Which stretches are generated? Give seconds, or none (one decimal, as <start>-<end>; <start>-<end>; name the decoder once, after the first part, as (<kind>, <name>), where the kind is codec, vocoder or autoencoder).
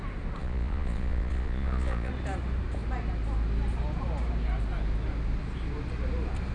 0.4-2.1 (vocoder, Vocos)